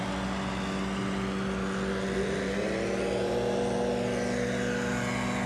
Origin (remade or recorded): recorded